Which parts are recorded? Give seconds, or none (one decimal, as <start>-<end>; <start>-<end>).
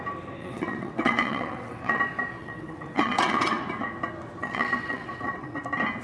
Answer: 0.0-0.4; 2.0-2.4; 3.6-4.4; 5.6-6.0